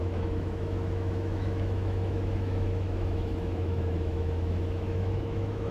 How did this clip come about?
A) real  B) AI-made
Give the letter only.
B